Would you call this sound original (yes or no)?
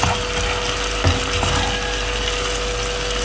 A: yes